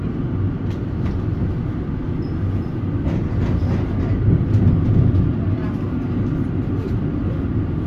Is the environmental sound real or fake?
real